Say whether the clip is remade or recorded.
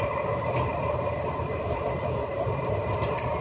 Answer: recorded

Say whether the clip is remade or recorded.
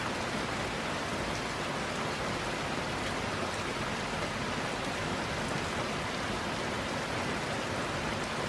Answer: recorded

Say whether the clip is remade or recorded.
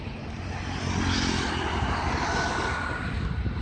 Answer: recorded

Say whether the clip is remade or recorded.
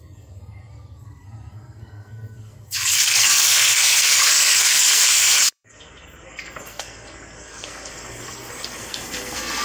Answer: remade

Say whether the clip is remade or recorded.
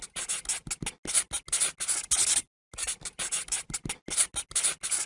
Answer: recorded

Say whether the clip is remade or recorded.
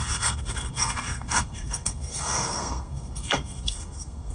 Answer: remade